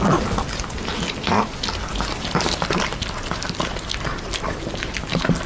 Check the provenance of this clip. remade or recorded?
recorded